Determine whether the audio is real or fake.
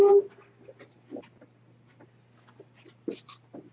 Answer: real